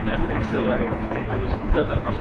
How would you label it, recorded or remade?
remade